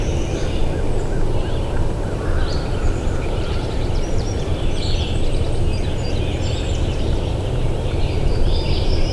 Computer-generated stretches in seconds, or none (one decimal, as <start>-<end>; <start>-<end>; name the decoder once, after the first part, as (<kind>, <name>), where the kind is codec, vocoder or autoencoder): 0.0-0.6 (vocoder, BigVGAN v2); 2.1-4.5; 7.0-9.1